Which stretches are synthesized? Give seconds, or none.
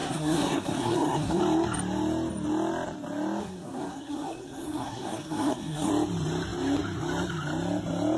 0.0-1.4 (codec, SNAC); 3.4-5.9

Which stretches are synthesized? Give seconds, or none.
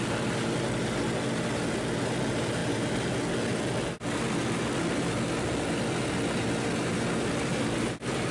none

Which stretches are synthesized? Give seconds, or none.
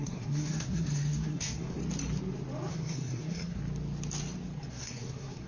0.0-1.8 (codec, SNAC); 2.7-3.6; 4.7-5.5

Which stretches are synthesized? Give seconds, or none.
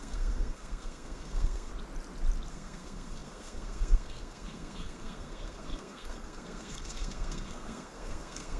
0.0-1.7 (codec, SNAC); 2.5-8.6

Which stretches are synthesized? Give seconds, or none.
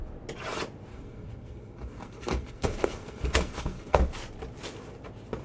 0.9-4.0 (codec, SNAC)